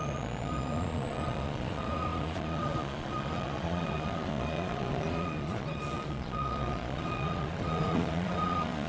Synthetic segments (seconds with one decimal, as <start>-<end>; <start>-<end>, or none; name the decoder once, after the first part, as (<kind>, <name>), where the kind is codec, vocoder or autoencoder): 0.0-8.9 (vocoder, Vocos)